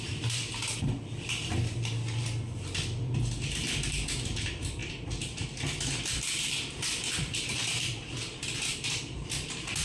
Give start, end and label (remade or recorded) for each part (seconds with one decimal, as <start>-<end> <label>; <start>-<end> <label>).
0.0-4.8 remade; 4.8-5.7 recorded; 5.7-9.8 remade